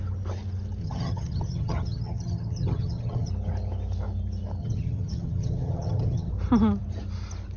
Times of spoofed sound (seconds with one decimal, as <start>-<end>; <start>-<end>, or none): 0.8-3.3; 4.6-6.3